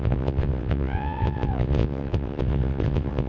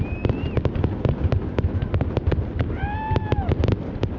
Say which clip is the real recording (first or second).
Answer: second